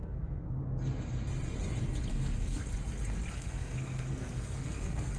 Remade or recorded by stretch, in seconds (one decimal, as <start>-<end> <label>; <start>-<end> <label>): 0.0-0.6 remade; 0.6-2.1 recorded; 2.1-2.6 remade; 2.6-3.3 recorded; 3.3-5.2 remade